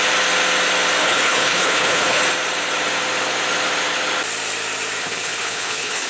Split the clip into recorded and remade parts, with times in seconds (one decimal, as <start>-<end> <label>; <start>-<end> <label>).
0.0-1.0 recorded; 1.0-2.2 remade; 2.2-5.0 recorded; 5.0-6.1 remade